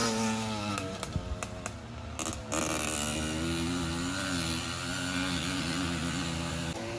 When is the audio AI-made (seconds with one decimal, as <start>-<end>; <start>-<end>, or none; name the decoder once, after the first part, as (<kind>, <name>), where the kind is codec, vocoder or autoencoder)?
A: none